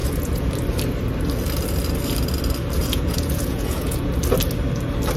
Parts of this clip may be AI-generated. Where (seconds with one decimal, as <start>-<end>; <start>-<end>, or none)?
0.0-0.5; 2.8-4.2